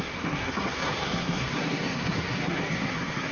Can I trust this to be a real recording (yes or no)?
no